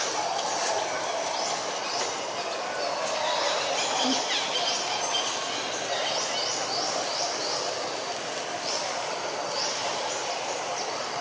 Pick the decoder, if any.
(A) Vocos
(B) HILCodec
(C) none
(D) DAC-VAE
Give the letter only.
C